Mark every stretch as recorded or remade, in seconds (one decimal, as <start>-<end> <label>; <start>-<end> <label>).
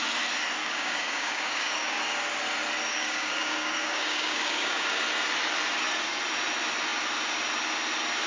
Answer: 0.0-0.6 recorded; 0.6-2.0 remade; 2.0-2.9 recorded; 2.9-5.0 remade; 5.0-8.3 recorded